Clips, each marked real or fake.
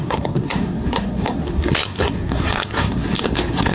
fake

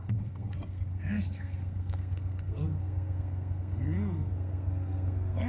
fake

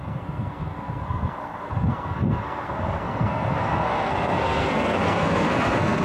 fake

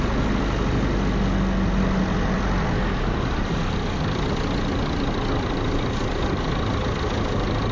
real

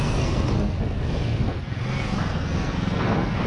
fake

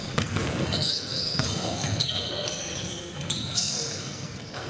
fake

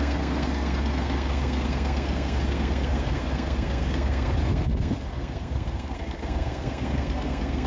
fake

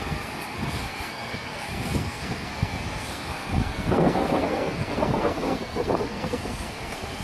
fake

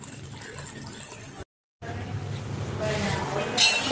real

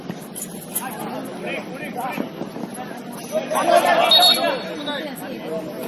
real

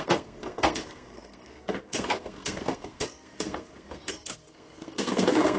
fake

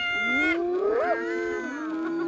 real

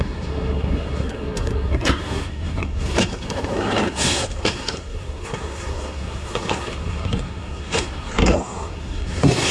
fake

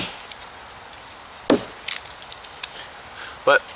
real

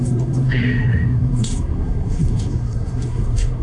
fake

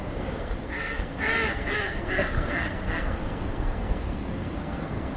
fake